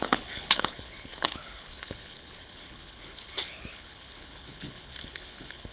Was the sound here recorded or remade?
remade